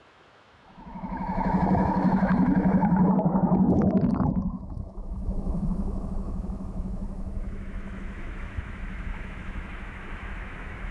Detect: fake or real fake